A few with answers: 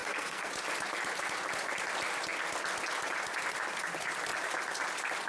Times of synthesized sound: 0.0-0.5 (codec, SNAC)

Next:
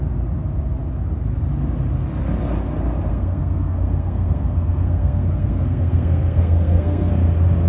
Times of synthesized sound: 3.1-7.1 (codec, SNAC)